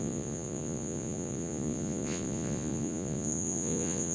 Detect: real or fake fake